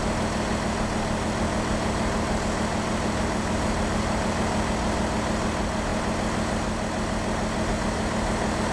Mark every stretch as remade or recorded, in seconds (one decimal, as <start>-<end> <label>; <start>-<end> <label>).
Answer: 0.0-8.7 recorded